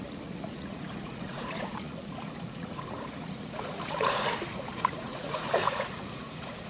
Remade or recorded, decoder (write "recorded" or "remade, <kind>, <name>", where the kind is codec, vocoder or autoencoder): remade, vocoder, Vocos